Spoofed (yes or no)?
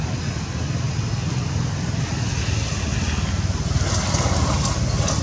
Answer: no